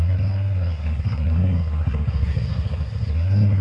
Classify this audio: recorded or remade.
remade